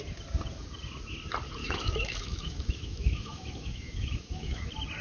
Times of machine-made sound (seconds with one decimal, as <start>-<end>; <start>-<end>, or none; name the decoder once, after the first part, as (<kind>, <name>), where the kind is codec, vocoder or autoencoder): 1.6-4.6 (autoencoder, DAC-VAE)